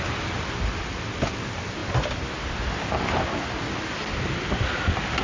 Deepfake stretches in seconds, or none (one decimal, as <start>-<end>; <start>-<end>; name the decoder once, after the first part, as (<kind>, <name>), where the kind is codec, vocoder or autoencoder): none